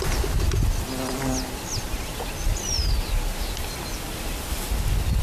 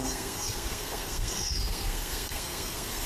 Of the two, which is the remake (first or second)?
second